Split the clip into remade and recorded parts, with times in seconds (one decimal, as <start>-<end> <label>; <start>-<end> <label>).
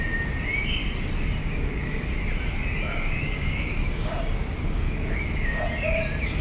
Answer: 0.0-1.4 recorded; 1.4-2.1 remade; 2.1-2.9 recorded; 2.9-4.1 remade; 4.1-4.6 recorded; 4.6-5.6 remade; 5.6-6.4 recorded